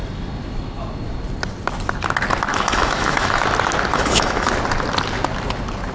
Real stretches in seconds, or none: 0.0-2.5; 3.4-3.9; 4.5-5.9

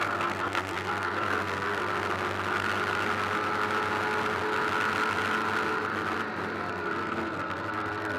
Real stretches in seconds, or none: 1.8-6.7

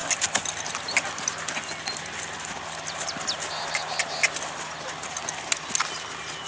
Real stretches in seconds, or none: 0.0-6.5

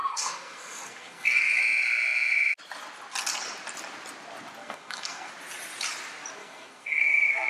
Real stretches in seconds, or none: 1.6-4.6; 5.3-6.4

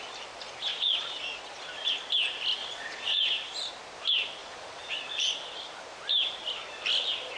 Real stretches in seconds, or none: 0.0-0.7; 1.6-2.6; 3.2-4.4; 4.9-7.4

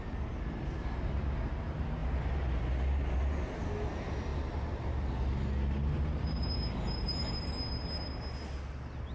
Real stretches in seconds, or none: 0.0-9.1